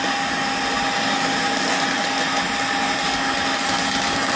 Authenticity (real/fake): real